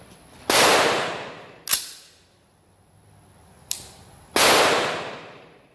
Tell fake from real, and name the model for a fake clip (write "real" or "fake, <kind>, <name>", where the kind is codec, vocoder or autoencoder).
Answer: real